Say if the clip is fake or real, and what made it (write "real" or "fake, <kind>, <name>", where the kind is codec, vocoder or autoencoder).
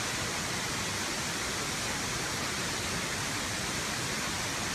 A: real